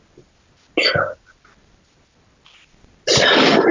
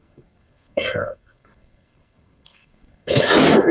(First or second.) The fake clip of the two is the second